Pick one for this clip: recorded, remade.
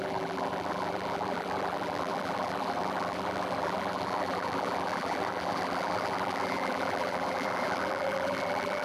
remade